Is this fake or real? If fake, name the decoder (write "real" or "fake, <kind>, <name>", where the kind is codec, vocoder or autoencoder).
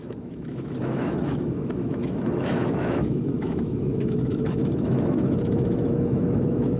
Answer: fake, autoencoder, DAC-VAE